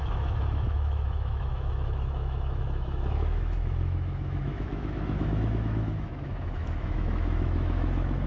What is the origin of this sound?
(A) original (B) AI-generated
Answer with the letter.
B